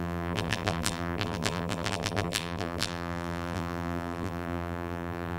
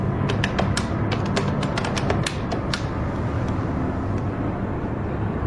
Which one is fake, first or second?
first